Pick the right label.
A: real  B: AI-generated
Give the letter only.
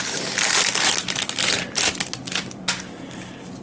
A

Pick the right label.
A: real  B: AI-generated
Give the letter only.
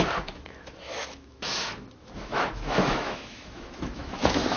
B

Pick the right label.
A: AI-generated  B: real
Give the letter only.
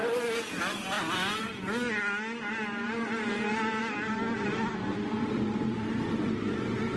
B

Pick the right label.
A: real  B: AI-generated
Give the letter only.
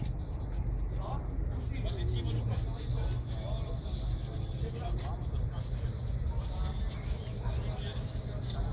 A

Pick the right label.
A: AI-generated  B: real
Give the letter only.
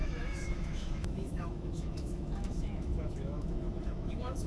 A